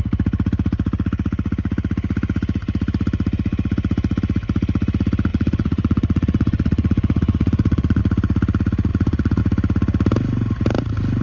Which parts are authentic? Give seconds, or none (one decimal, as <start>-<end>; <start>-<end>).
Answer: 0.0-5.3; 8.0-8.9; 9.4-11.2